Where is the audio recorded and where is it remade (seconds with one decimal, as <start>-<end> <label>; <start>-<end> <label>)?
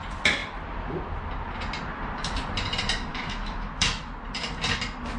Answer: 0.0-3.1 recorded; 3.1-4.0 remade; 4.0-5.2 recorded